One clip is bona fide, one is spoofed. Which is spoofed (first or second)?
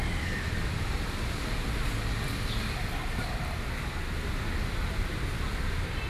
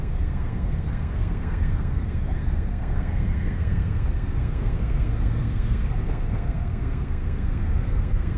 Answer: second